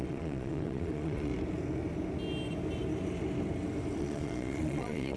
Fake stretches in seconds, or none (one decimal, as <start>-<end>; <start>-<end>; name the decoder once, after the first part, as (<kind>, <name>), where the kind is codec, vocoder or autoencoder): 0.0-1.3 (vocoder, Vocos); 4.0-5.2